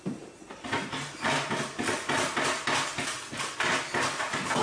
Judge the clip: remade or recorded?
recorded